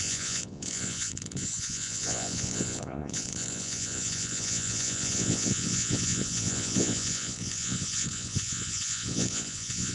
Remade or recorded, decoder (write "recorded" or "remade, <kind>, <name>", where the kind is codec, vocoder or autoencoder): remade, vocoder, Vocos